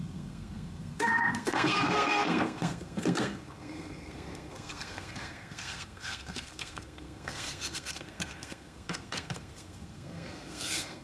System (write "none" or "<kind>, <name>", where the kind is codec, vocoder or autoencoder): codec, SNAC